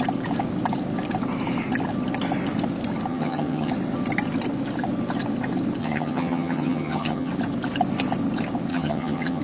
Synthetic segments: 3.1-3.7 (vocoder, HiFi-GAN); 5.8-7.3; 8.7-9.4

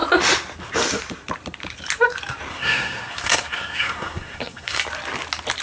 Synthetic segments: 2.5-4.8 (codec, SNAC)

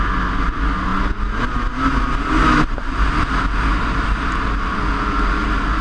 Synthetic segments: none